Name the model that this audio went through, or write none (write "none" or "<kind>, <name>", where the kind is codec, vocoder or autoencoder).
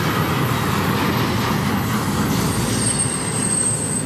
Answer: none